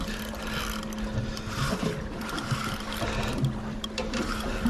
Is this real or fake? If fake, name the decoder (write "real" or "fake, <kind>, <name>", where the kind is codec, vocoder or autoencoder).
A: real